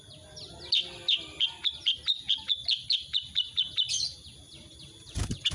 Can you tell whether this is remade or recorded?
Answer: recorded